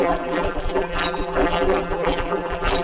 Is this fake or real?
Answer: fake